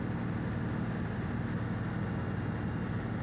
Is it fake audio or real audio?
real